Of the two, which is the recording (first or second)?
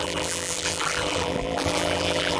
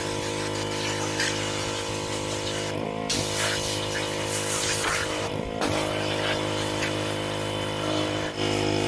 second